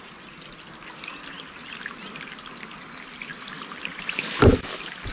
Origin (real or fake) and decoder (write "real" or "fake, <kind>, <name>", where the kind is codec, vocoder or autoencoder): real